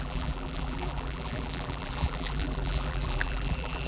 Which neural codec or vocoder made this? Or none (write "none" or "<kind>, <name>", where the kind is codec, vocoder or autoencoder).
vocoder, BigVGAN v2